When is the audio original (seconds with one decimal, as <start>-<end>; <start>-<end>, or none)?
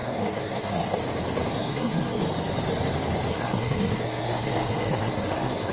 1.0-1.6; 2.2-3.3